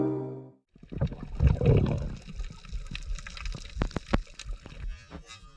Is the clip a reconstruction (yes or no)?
no